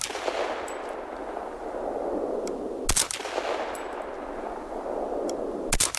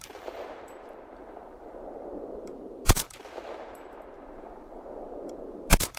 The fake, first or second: second